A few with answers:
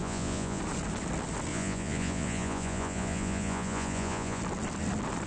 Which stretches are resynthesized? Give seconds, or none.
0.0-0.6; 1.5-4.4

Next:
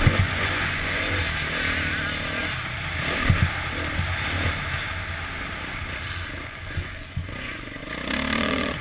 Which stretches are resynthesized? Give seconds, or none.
0.0-1.2; 6.4-7.8; 8.4-8.8